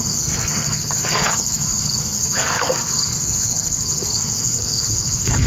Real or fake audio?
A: fake